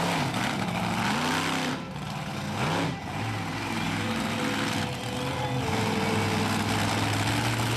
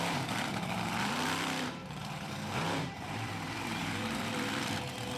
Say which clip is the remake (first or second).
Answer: second